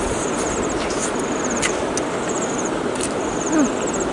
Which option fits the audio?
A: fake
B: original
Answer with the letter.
B